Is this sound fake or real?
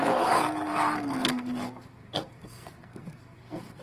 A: fake